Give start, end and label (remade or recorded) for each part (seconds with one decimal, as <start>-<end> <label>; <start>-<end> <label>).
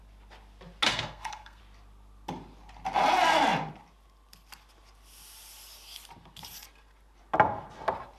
0.0-0.9 recorded; 0.9-1.6 remade; 1.6-8.2 recorded